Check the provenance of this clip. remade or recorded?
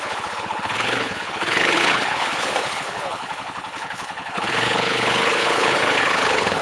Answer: remade